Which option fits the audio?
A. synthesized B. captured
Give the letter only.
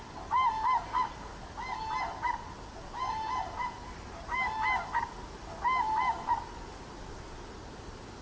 B